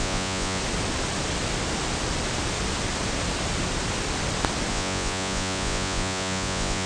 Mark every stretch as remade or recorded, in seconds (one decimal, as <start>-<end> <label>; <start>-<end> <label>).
0.0-0.6 remade; 0.6-4.7 recorded; 4.7-6.9 remade

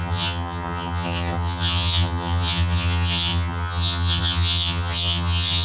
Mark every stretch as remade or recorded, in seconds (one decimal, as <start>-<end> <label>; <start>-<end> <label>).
0.0-5.6 remade